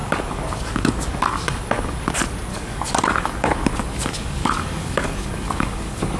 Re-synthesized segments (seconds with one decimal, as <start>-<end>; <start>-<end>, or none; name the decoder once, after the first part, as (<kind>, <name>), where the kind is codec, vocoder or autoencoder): 0.0-2.0 (codec, DAC); 2.5-6.2